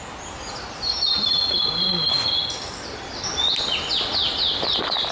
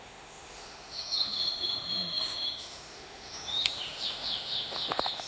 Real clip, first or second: first